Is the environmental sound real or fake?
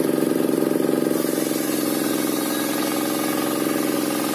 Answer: real